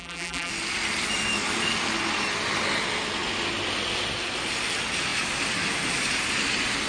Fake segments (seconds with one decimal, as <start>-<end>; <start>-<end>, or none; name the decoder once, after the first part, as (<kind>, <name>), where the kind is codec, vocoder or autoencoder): 0.0-0.5 (vocoder, BigVGAN v2)